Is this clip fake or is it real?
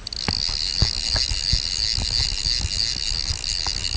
real